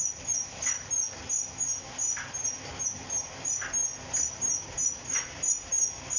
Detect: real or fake real